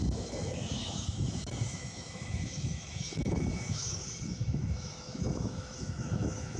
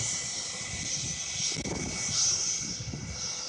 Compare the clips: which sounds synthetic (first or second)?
first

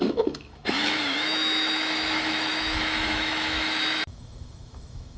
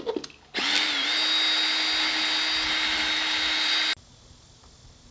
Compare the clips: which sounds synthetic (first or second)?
first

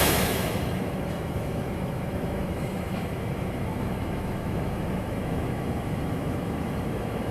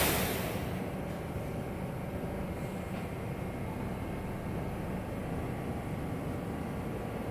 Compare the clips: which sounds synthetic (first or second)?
first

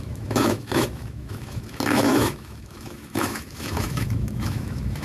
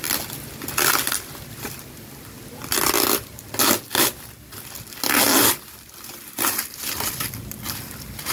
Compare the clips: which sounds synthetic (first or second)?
first